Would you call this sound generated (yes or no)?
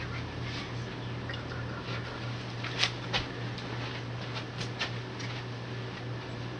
no